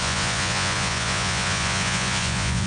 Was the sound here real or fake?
fake